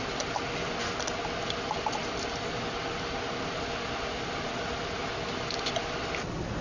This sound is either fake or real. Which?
real